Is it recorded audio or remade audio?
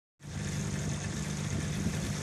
recorded